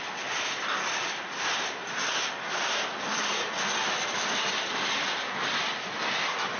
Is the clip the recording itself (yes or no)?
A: yes